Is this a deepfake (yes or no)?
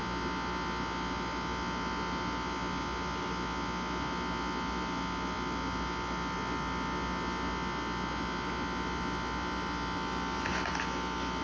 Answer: no